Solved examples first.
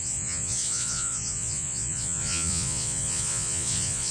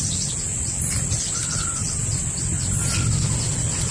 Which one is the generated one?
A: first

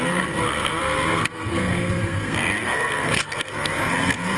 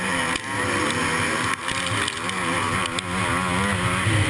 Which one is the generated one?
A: first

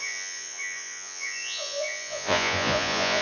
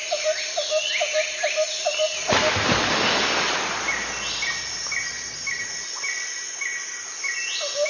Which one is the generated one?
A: first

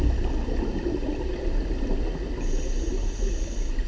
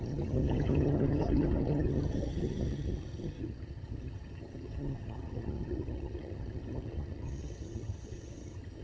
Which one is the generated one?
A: second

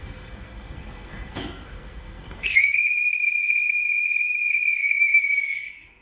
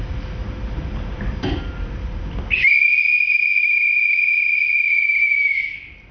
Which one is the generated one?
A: first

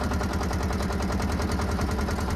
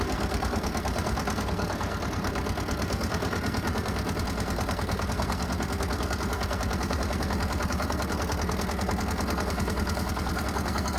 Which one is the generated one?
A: second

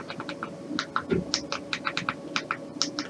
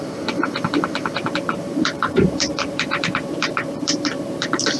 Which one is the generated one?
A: second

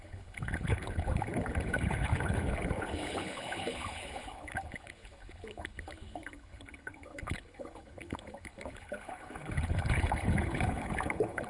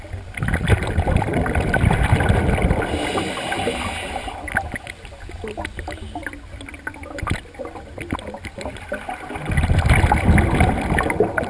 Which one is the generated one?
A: first